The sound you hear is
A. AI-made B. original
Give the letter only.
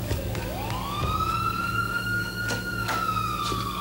A